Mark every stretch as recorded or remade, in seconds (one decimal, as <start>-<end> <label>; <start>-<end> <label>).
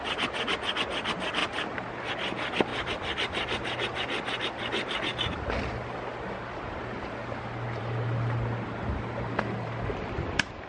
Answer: 0.0-10.7 recorded